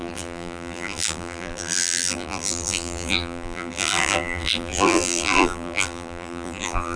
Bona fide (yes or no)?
no